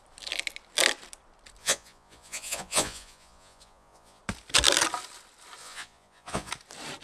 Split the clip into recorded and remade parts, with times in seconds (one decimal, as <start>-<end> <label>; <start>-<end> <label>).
0.0-1.6 recorded; 1.6-4.2 remade; 4.2-5.6 recorded; 5.6-6.5 remade; 6.5-7.0 recorded